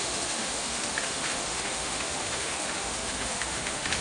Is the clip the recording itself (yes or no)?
no